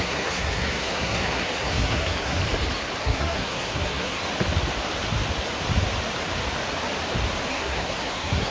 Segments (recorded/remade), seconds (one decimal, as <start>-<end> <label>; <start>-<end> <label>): 0.0-2.4 remade; 2.4-3.0 recorded; 3.0-4.2 remade; 4.2-7.5 recorded; 7.5-8.5 remade